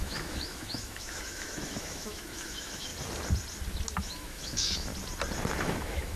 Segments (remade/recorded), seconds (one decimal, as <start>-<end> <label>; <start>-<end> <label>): 0.0-2.9 remade; 2.9-4.0 recorded; 4.0-4.9 remade; 4.9-5.6 recorded; 5.6-6.2 remade